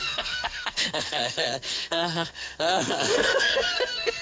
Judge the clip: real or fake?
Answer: fake